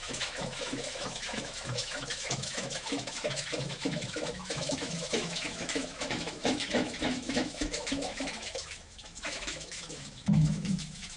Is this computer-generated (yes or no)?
yes